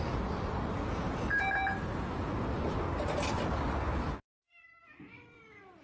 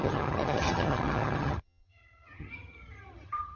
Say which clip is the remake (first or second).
second